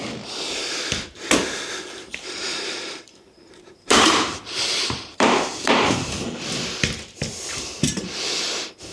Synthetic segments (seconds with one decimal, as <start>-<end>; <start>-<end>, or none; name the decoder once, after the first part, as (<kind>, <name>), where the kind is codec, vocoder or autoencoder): 2.1-6.4 (vocoder, BigVGAN v2)

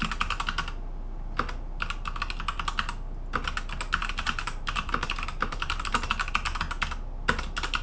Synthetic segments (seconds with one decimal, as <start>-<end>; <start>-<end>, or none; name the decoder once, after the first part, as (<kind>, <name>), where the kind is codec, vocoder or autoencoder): 4.0-5.9 (vocoder, BigVGAN v2)